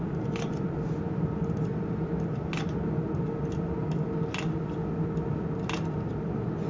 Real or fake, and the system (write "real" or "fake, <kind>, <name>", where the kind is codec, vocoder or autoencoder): real